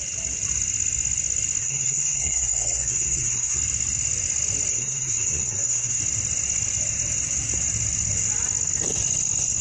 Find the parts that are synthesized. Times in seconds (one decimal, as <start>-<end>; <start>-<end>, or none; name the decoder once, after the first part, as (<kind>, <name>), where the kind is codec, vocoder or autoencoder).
1.6-3.6 (codec, SNAC); 4.7-6.0